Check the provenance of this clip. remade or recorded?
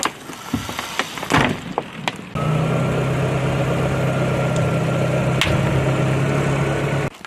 recorded